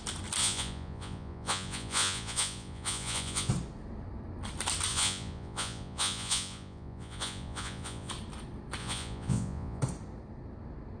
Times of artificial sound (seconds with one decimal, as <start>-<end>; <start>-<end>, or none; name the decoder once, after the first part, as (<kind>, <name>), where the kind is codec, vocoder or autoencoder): 0.4-3.5 (vocoder, Vocos); 4.9-8.1; 8.8-9.8

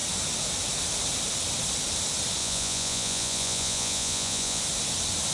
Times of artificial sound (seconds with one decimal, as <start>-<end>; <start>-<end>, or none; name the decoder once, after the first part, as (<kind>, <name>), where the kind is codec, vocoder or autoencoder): 2.4-4.6 (vocoder, Vocos)

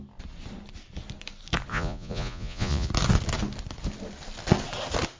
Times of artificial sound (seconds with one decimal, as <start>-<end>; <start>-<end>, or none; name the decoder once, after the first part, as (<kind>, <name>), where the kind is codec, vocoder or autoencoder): 1.7-2.9 (vocoder, Vocos)

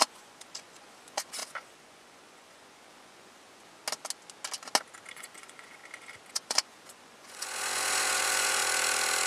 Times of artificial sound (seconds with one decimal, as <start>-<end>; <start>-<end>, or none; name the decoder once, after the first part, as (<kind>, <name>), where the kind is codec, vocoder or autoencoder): 0.0-3.8 (vocoder, Vocos); 5.1-5.8; 6.3-8.6

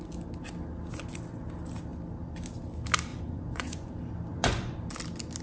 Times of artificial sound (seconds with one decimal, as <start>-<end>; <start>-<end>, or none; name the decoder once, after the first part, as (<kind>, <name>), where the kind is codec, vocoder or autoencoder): 3.1-3.9 (vocoder, Vocos); 4.3-4.8

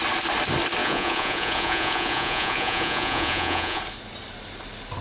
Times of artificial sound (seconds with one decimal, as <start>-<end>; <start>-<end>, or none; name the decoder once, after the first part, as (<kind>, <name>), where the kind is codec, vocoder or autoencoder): 0.8-3.8 (vocoder, Vocos)

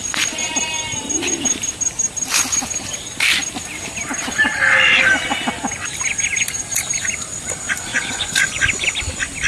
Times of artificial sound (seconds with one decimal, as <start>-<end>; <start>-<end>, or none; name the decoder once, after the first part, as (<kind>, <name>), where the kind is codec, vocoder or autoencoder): 7.9-8.6 (vocoder, Vocos)